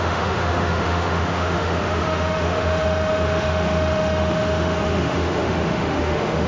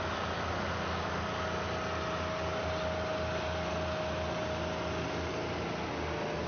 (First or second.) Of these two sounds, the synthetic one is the first